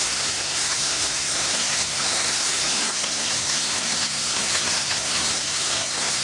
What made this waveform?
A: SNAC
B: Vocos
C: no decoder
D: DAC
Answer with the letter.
A